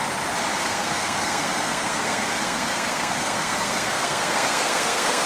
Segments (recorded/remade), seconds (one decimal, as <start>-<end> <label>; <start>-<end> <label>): 0.0-0.6 recorded; 0.6-5.3 remade